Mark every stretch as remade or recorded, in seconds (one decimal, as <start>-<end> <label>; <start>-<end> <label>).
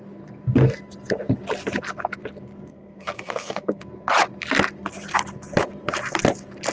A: 0.0-2.7 recorded; 2.7-3.8 remade; 3.8-6.7 recorded